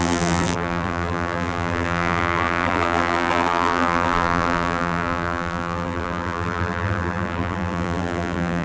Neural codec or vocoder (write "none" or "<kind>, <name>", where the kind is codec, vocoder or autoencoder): vocoder, BigVGAN v2